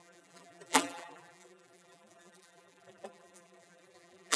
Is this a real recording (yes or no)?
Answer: no